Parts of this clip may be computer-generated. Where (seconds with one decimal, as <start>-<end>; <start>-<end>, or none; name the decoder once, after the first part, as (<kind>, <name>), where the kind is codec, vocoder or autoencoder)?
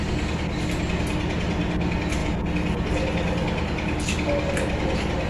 none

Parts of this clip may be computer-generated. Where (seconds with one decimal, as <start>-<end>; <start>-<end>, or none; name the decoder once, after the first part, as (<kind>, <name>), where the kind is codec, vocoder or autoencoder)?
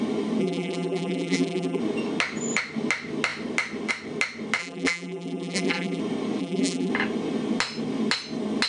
0.4-1.8 (vocoder, BigVGAN v2); 4.6-6.0; 6.4-6.9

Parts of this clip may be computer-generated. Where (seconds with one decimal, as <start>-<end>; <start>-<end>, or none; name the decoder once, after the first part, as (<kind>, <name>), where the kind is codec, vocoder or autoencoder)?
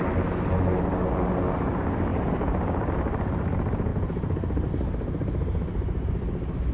2.1-2.9 (vocoder, BigVGAN v2); 3.9-4.7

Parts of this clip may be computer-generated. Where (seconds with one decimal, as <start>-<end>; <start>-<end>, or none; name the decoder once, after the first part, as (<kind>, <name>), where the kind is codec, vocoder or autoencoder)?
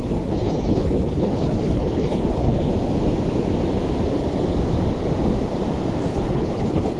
0.0-2.7 (codec, HILCodec); 6.1-7.0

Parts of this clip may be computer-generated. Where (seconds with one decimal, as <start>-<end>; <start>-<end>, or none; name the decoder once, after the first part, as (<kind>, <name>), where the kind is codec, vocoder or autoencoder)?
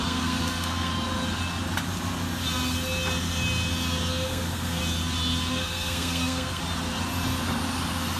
0.0-0.9 (codec, SNAC); 4.1-4.8; 5.5-6.6